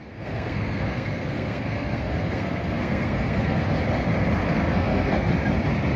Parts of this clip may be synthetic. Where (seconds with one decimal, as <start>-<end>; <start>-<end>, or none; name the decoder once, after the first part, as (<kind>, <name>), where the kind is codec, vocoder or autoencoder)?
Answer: 0.0-3.6 (codec, SNAC); 4.4-5.3